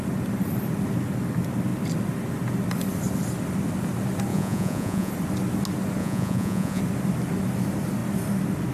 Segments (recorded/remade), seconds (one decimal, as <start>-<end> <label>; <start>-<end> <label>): 0.0-4.3 recorded; 4.3-5.1 remade; 5.1-6.0 recorded; 6.0-6.8 remade; 6.8-8.7 recorded